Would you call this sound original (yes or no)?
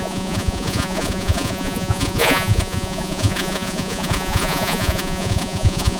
no